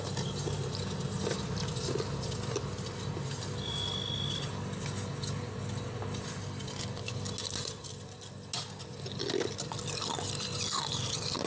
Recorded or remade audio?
recorded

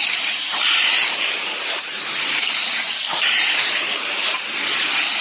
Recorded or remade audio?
remade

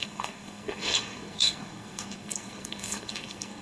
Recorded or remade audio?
remade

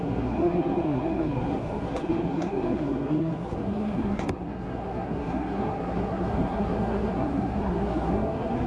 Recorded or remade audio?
remade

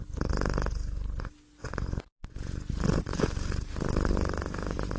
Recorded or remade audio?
recorded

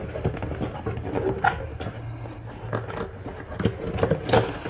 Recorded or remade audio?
recorded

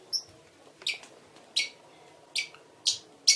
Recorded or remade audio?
recorded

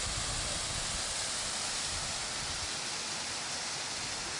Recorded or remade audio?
recorded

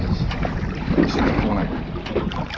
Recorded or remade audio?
recorded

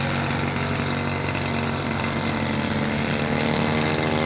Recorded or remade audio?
recorded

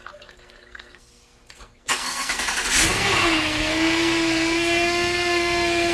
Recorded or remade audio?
remade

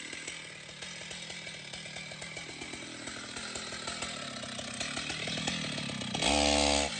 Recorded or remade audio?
recorded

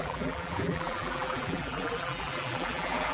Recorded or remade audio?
remade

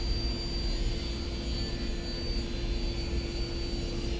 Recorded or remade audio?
recorded